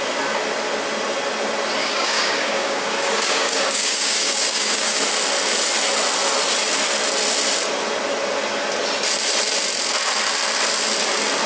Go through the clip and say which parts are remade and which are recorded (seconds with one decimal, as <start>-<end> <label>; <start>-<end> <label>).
0.0-1.8 recorded; 1.8-5.0 remade; 5.0-11.5 recorded

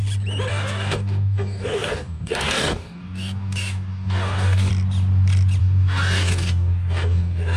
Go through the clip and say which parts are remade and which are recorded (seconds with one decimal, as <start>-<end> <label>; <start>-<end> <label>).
0.0-0.5 recorded; 0.5-4.7 remade; 4.7-5.6 recorded; 5.6-7.6 remade

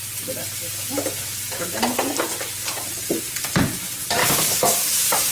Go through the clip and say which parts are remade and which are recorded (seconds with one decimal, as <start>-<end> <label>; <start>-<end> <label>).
0.0-4.2 recorded; 4.2-5.3 remade

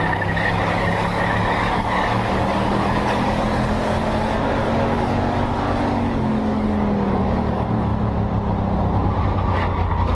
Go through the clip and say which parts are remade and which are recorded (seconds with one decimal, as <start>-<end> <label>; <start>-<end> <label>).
0.0-4.0 remade; 4.0-4.6 recorded; 4.6-7.9 remade; 7.9-9.2 recorded; 9.2-10.1 remade